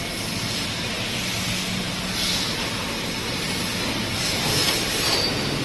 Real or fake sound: real